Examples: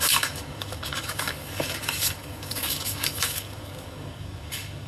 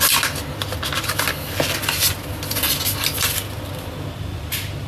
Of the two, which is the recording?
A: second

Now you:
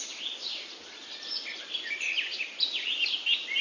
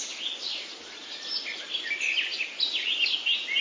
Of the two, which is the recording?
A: second